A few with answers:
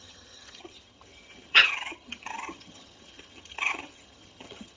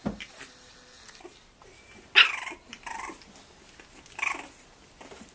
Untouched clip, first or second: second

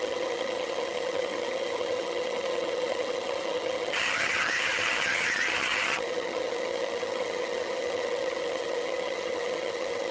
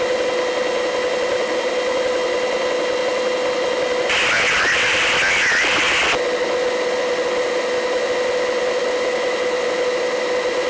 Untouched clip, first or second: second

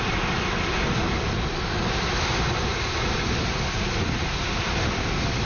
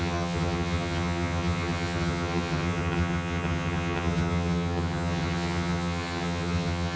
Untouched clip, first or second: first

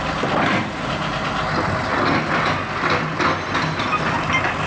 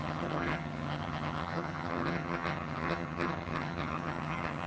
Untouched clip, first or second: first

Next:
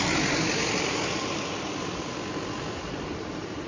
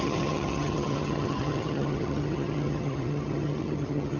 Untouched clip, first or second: first